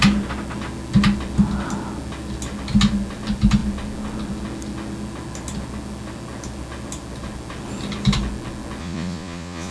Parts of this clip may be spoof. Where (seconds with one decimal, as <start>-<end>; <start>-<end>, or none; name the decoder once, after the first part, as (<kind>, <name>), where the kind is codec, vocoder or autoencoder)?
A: 8.8-9.7 (vocoder, Vocos)